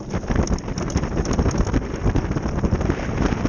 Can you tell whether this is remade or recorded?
recorded